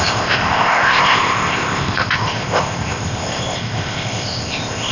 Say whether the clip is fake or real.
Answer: fake